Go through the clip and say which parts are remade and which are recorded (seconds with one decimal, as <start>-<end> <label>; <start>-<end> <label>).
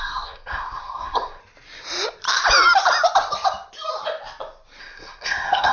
0.0-1.4 remade; 1.4-4.8 recorded; 4.8-5.7 remade